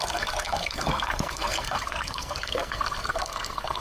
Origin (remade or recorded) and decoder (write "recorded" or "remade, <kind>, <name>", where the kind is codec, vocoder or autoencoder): remade, codec, SNAC